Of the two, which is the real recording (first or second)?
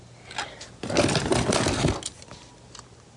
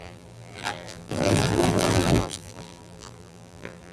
first